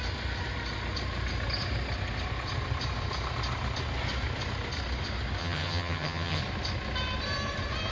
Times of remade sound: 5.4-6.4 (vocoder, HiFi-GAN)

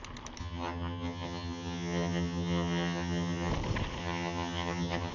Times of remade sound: 0.4-3.5 (vocoder, HiFi-GAN); 4.0-5.1

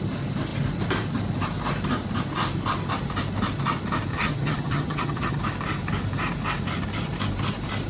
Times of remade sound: 4.1-5.4 (vocoder, HiFi-GAN)